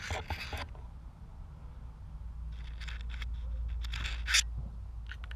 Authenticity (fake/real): real